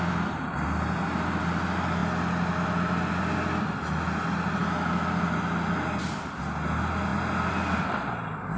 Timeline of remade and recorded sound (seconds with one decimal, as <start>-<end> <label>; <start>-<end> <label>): 0.0-8.6 recorded